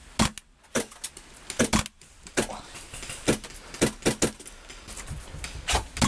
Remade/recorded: recorded